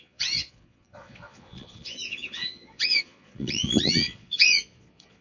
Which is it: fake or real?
fake